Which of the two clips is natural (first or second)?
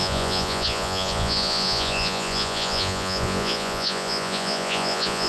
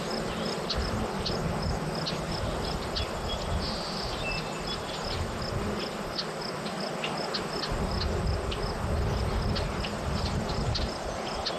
second